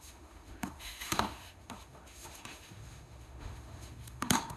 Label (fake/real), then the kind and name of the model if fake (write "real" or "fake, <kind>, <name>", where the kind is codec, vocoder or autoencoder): fake, autoencoder, DAC-VAE